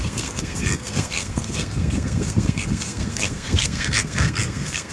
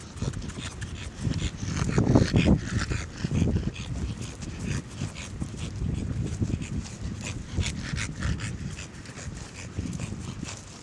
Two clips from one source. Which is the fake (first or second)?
first